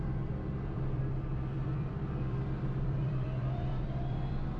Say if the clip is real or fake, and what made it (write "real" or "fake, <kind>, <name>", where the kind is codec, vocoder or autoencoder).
fake, vocoder, BigVGAN v2